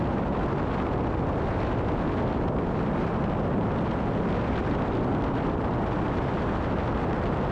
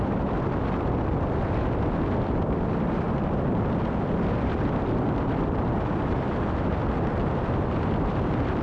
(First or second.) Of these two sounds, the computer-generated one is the second